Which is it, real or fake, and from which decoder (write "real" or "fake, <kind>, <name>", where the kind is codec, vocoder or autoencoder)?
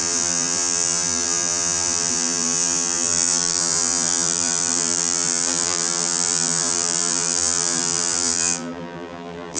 fake, vocoder, BigVGAN v2